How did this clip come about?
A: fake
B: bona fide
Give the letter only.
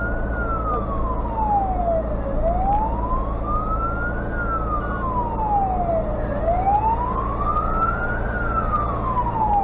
B